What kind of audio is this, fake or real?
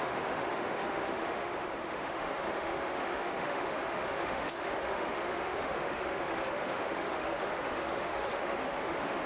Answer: fake